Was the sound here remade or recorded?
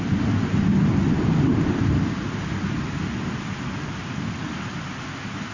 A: recorded